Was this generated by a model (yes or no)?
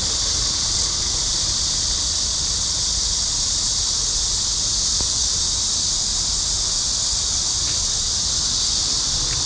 no